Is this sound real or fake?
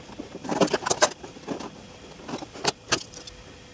real